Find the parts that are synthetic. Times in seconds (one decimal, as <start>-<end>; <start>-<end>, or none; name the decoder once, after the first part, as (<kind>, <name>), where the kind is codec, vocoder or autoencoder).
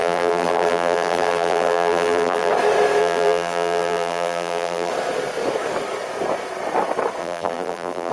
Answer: 0.0-2.5 (vocoder, BigVGAN v2); 3.0-4.9; 7.2-8.1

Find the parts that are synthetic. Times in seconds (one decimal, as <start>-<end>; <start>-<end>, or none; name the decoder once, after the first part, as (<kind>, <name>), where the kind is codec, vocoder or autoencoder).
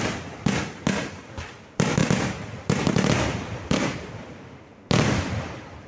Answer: none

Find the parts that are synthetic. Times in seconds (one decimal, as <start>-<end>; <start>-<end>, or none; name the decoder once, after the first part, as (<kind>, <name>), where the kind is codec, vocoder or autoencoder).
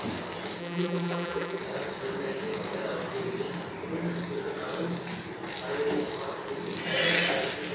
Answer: 0.6-1.6 (vocoder, BigVGAN v2)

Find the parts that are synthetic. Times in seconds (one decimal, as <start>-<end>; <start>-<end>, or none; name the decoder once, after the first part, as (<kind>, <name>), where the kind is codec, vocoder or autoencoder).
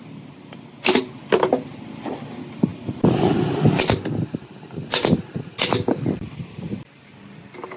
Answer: none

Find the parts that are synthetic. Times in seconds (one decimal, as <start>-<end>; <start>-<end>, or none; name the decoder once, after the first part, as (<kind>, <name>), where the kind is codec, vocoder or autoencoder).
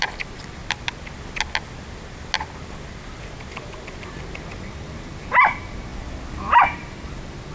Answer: 0.0-0.6 (vocoder, BigVGAN v2); 4.2-5.9; 6.6-7.5